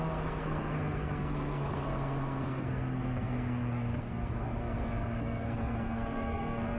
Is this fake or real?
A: fake